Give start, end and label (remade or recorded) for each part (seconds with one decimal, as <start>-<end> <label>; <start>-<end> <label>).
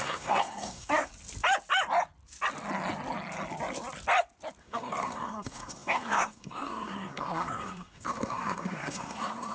0.0-1.1 remade; 1.1-4.6 recorded; 4.6-9.5 remade